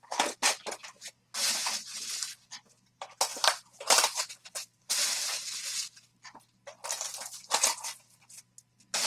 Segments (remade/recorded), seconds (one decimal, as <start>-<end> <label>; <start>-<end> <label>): 0.0-3.3 recorded; 3.3-5.9 remade; 5.9-9.1 recorded